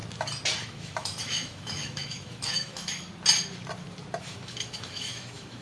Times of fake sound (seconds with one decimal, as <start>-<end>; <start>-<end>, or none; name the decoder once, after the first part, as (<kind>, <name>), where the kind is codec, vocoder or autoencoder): 0.6-3.1 (autoencoder, DAC-VAE); 4.2-5.6